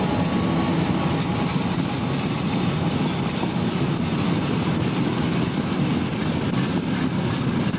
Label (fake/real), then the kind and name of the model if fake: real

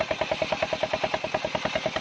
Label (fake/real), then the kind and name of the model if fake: real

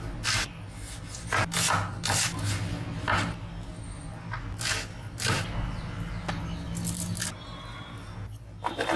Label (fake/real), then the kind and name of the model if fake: real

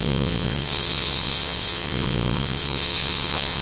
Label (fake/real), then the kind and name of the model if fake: fake, vocoder, WaveNeXt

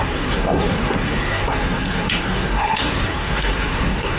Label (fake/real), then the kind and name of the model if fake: fake, codec, SNAC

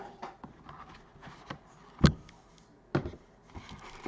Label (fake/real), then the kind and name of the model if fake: real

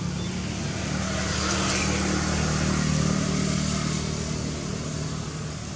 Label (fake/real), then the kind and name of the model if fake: real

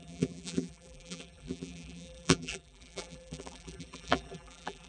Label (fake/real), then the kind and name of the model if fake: fake, vocoder, BigVGAN v2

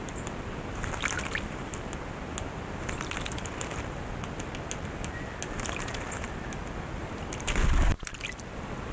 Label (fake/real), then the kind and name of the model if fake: real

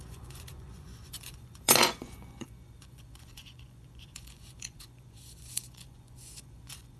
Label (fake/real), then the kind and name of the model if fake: fake, vocoder, Vocos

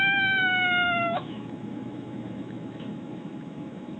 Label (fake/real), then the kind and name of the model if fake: fake, autoencoder, DAC-VAE